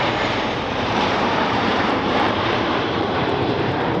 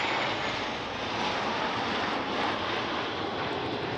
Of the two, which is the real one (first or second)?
second